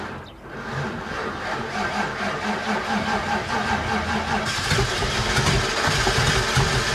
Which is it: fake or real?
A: real